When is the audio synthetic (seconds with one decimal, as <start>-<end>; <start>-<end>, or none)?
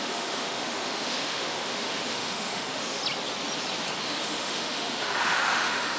0.0-3.0; 4.0-6.0